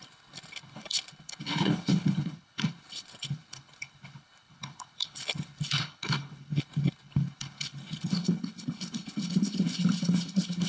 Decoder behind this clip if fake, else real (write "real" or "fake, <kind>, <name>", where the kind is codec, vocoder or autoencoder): fake, codec, HILCodec